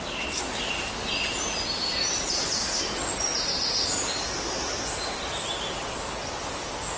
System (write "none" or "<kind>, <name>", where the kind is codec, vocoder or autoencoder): none